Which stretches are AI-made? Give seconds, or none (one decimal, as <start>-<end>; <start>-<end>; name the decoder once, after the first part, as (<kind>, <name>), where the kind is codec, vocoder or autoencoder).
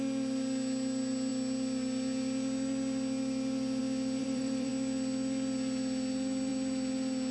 4.2-4.7 (vocoder, BigVGAN v2)